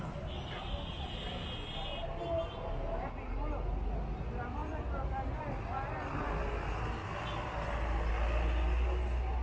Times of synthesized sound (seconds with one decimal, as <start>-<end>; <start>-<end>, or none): none